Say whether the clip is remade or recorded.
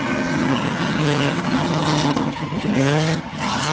remade